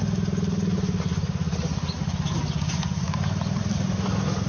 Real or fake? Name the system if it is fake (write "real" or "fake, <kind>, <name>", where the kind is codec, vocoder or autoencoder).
real